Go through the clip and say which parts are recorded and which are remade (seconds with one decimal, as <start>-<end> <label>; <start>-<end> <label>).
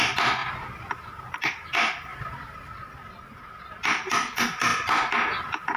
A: 0.0-5.8 recorded